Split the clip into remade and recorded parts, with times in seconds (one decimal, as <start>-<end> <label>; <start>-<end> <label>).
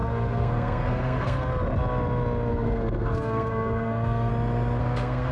0.0-1.5 remade; 1.5-2.5 recorded; 2.5-4.3 remade; 4.3-4.8 recorded; 4.8-5.3 remade